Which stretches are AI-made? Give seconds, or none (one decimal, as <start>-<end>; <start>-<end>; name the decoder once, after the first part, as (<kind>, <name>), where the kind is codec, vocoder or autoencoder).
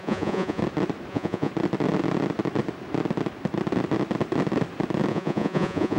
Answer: 0.0-0.6 (vocoder, Vocos); 1.1-1.5; 5.1-6.0